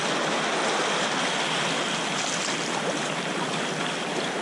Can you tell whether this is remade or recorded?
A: recorded